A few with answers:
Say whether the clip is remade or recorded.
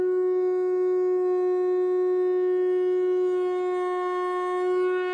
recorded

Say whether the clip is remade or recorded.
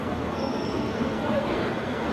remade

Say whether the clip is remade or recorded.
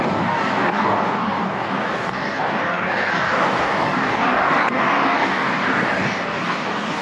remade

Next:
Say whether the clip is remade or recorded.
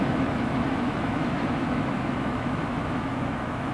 remade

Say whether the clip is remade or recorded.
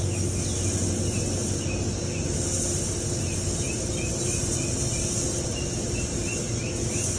recorded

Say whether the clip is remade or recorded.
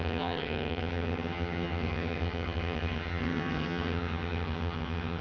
remade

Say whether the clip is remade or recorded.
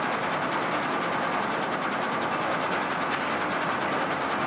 recorded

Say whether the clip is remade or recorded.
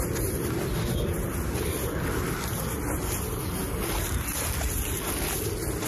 recorded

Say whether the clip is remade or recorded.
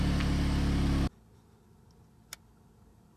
recorded